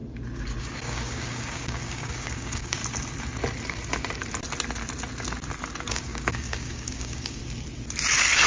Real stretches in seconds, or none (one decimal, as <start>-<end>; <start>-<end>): 0.0-0.6; 2.8-5.9; 7.4-8.5